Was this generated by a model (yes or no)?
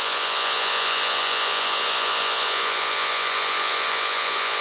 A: yes